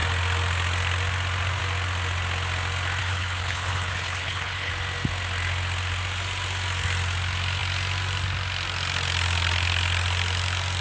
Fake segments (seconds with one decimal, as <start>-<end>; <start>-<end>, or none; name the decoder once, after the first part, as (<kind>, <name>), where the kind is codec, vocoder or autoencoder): 3.0-4.7 (codec, HILCodec)